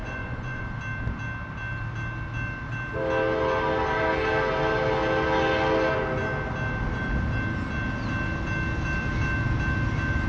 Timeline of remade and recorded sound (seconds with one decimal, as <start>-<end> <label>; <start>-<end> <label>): 0.0-0.6 remade; 0.6-10.3 recorded